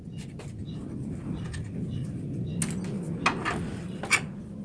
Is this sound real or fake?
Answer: real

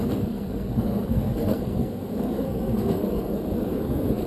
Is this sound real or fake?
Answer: fake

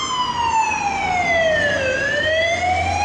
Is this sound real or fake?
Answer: real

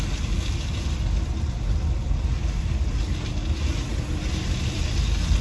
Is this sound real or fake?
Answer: real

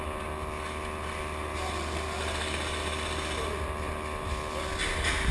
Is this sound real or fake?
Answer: real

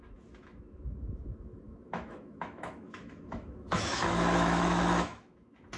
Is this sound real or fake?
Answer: fake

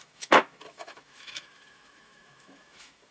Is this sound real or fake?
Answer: fake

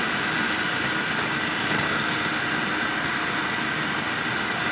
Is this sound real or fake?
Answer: real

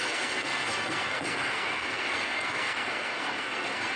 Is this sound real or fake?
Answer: fake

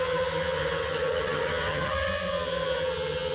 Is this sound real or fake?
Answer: fake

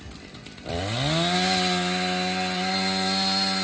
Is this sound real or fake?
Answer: real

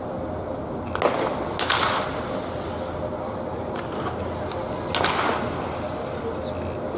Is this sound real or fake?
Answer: real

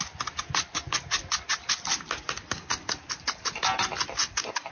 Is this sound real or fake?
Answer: real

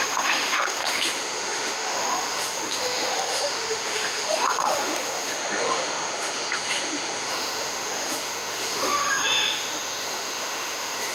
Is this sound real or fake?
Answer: fake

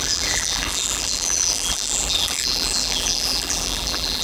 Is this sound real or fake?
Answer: fake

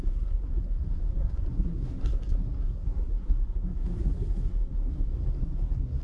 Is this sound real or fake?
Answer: fake